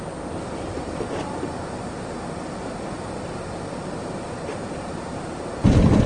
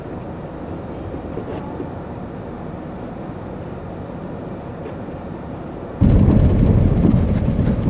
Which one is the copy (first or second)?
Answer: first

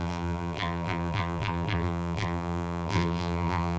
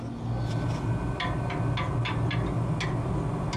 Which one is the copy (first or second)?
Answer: first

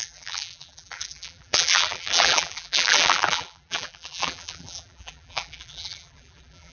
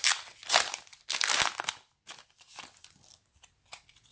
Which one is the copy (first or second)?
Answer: first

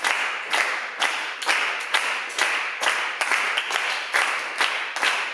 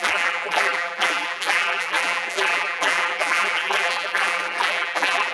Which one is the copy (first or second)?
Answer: second